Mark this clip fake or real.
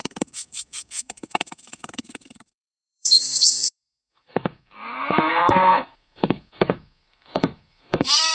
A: fake